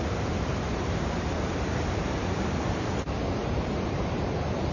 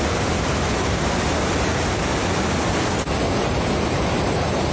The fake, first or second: first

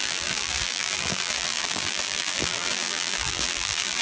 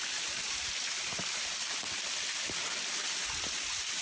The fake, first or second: first